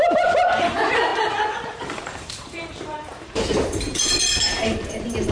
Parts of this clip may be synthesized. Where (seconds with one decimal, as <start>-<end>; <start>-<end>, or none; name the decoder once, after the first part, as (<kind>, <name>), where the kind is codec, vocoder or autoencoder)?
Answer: 0.0-1.1 (vocoder, BigVGAN v2); 1.7-5.3

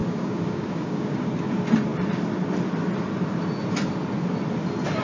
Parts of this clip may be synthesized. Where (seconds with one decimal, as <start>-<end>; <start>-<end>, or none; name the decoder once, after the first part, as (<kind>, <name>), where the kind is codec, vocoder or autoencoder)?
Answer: 0.0-1.3 (codec, DAC)

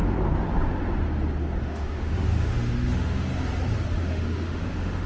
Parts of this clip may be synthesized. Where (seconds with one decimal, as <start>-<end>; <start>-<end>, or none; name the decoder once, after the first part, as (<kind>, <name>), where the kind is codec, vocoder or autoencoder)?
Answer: 1.6-3.3 (autoencoder, DAC-VAE); 4.0-5.1

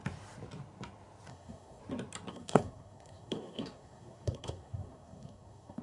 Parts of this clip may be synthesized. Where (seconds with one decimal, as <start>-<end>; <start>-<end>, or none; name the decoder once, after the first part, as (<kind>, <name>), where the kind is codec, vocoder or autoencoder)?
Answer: 1.3-1.8 (codec, SNAC); 2.3-5.8

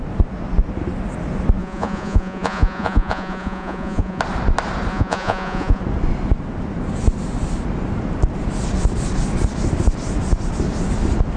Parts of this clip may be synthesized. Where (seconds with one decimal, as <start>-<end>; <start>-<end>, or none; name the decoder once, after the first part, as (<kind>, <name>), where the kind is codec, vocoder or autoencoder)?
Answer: 1.6-4.2 (vocoder, Vocos); 4.9-5.8

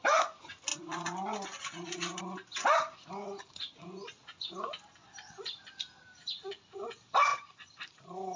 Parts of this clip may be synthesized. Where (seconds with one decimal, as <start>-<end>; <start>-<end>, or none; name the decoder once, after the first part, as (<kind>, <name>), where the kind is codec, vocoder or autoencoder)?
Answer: 0.7-2.2 (vocoder, BigVGAN v2); 7.3-8.4

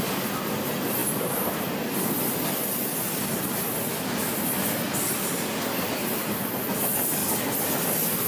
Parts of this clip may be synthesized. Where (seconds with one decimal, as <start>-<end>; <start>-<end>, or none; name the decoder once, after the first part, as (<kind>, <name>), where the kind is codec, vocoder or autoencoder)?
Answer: none